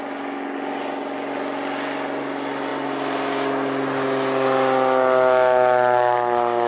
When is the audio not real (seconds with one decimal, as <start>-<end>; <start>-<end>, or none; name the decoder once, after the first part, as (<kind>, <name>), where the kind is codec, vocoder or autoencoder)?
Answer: none